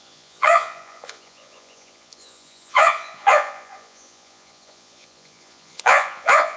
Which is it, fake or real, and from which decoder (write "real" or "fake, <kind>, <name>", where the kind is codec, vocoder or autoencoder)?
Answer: fake, vocoder, Vocos